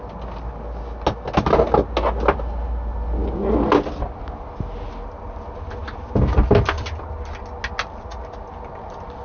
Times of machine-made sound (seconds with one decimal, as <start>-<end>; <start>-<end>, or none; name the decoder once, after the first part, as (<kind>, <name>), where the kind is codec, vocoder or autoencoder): none